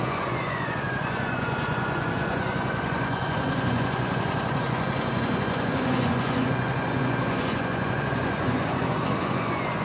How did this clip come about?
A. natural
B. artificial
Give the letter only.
B